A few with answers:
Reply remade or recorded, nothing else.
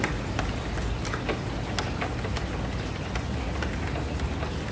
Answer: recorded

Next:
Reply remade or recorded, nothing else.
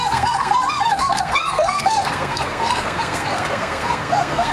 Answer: remade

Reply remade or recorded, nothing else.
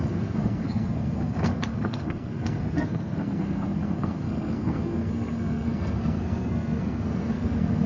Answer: remade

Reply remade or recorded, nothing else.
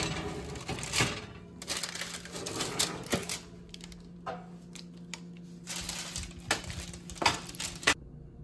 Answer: recorded